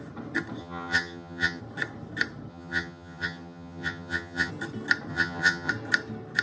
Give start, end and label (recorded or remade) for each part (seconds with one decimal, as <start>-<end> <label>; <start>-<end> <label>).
0.0-0.6 recorded; 0.6-1.6 remade; 1.6-2.5 recorded; 2.5-4.5 remade; 4.5-5.1 recorded; 5.1-5.7 remade; 5.7-6.4 recorded